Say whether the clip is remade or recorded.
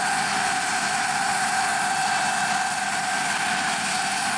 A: recorded